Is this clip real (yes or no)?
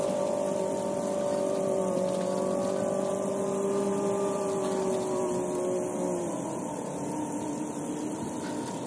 yes